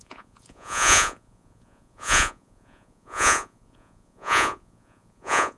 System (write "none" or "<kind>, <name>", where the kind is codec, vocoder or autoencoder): vocoder, Vocos